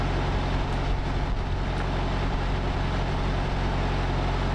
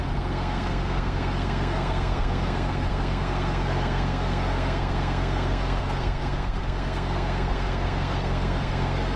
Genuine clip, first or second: first